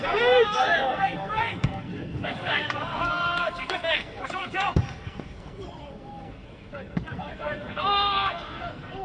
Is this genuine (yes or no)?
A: no